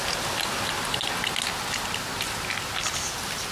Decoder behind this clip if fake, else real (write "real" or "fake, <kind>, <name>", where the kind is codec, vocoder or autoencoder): real